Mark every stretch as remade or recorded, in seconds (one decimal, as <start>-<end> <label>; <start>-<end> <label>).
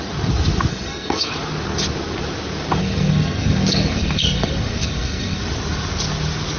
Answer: 0.0-0.7 recorded; 0.7-1.3 remade; 1.3-2.8 recorded; 2.8-5.4 remade; 5.4-6.6 recorded